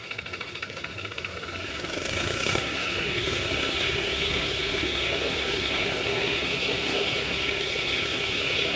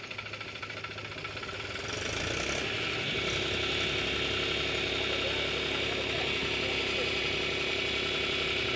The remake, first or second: first